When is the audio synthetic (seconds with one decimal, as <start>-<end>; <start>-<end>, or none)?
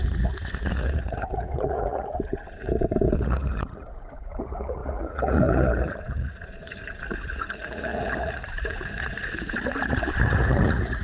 0.0-11.0